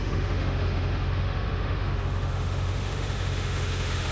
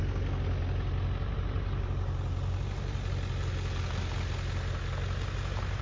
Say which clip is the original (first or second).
second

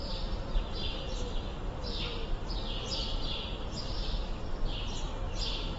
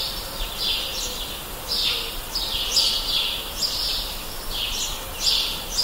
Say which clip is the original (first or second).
first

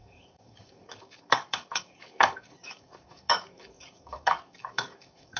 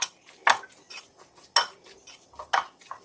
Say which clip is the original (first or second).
second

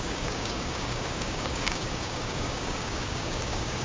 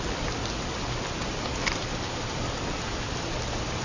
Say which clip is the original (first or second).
second